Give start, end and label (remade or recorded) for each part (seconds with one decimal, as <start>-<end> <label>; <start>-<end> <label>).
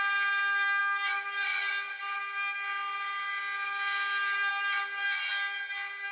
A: 0.0-6.1 recorded